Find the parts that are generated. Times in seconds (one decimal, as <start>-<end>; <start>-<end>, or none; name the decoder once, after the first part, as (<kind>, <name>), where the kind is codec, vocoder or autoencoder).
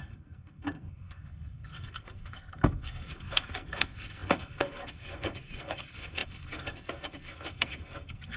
0.0-8.4 (codec, SNAC)